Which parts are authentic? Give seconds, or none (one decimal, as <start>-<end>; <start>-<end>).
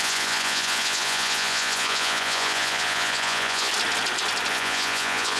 3.7-4.5